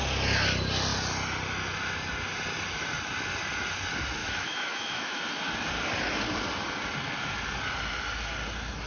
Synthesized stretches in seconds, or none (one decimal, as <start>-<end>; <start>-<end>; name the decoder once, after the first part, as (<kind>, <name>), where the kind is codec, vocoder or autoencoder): 4.2-5.2 (autoencoder, DAC-VAE)